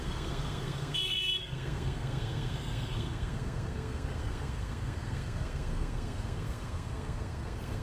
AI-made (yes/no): yes